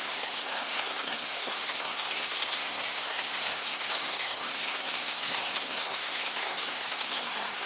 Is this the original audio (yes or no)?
no